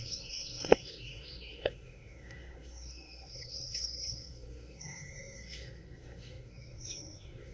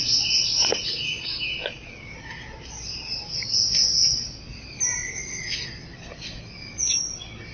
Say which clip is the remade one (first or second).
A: first